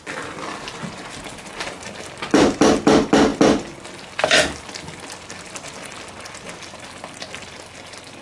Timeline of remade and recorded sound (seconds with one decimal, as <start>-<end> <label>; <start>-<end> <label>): 0.0-8.2 recorded

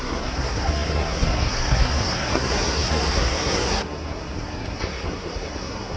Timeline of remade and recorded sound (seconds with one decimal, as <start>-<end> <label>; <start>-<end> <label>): 0.0-6.0 remade

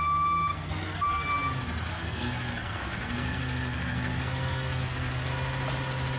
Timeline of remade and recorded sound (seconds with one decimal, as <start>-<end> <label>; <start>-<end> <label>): 0.0-0.5 recorded; 0.5-1.3 remade; 1.3-1.9 recorded; 1.9-5.3 remade; 5.3-6.2 recorded